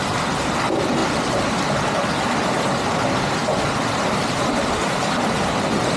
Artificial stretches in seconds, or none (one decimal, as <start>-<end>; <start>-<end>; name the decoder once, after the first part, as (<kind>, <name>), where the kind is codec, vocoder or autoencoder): none